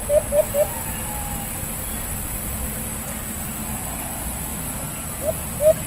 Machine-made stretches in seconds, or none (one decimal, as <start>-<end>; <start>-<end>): none